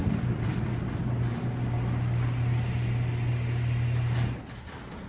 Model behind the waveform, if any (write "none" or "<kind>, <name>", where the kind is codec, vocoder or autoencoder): none